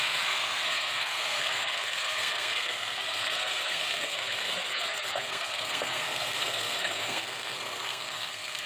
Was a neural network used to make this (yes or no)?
yes